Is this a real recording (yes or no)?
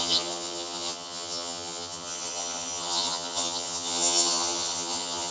no